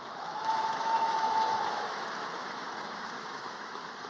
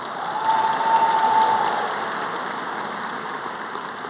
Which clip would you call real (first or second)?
second